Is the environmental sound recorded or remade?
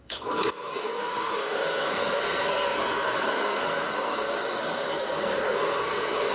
remade